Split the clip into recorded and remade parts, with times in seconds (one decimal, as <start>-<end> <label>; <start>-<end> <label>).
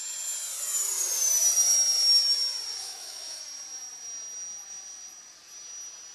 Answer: 0.0-2.8 recorded; 2.8-3.4 remade; 3.4-6.1 recorded